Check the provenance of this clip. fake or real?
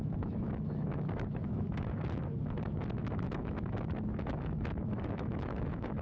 fake